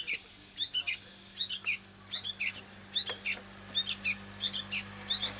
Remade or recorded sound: recorded